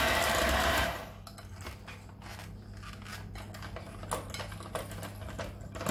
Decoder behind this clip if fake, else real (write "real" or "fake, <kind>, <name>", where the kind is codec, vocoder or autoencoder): real